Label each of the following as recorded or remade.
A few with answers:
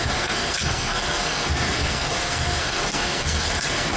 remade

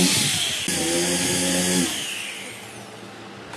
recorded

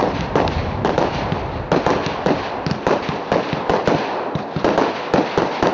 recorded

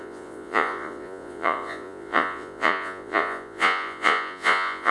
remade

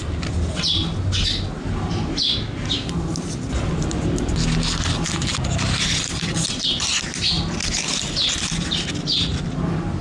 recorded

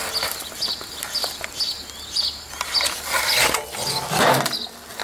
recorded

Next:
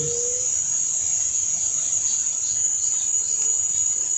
recorded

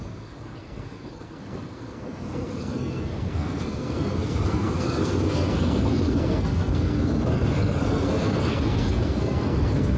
remade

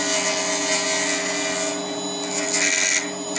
recorded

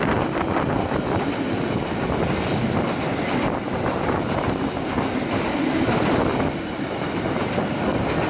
recorded